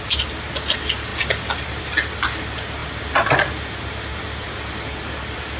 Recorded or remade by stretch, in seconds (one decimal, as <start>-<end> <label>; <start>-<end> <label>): 0.0-5.6 recorded